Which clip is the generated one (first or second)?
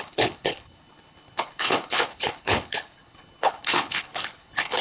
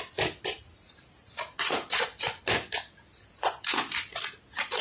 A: first